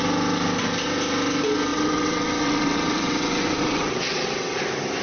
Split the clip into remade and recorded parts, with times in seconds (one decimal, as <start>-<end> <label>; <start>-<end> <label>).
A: 0.0-1.7 recorded; 1.7-4.6 remade; 4.6-5.0 recorded

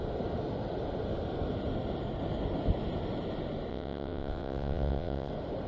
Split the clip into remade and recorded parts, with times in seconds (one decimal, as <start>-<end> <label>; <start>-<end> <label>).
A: 0.0-3.7 recorded; 3.7-5.3 remade; 5.3-5.7 recorded